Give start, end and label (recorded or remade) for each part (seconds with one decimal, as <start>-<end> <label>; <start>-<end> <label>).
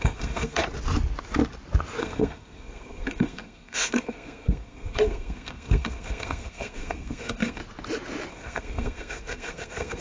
0.0-0.6 remade; 0.6-2.0 recorded; 2.0-7.6 remade; 7.6-8.3 recorded; 8.3-10.0 remade